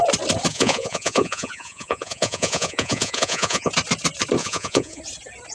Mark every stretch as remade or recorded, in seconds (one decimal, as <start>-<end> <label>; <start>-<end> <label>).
0.0-0.5 recorded; 0.5-3.7 remade; 3.7-4.4 recorded; 4.4-5.0 remade; 5.0-5.5 recorded

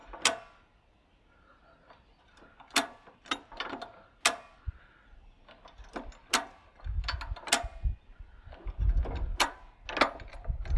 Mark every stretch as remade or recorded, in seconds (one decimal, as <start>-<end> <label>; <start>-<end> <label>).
0.0-10.8 recorded

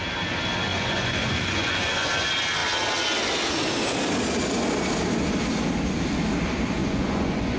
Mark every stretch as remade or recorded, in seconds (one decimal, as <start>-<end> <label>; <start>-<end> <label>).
0.0-0.7 recorded; 0.7-2.1 remade; 2.1-6.8 recorded; 6.8-7.6 remade

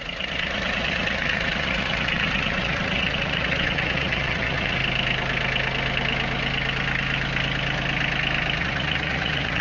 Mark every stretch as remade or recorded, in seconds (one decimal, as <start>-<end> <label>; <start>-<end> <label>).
0.0-4.8 remade; 4.8-8.6 recorded; 8.6-9.6 remade

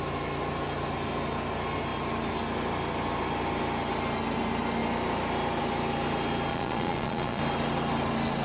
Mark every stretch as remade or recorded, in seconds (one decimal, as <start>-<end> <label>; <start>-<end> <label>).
0.0-6.5 recorded; 6.5-7.4 remade; 7.4-8.4 recorded

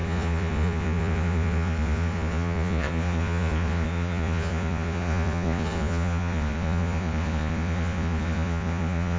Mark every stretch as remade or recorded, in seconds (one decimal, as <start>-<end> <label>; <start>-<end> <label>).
0.0-9.2 remade

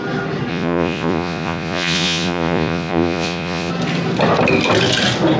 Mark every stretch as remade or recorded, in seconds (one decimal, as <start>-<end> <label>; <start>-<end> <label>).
0.0-0.5 recorded; 0.5-3.7 remade; 3.7-5.4 recorded